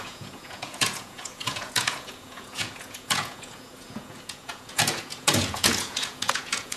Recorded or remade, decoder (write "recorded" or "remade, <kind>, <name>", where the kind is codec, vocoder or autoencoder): remade, vocoder, Vocos